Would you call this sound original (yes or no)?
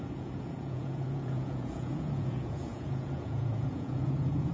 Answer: no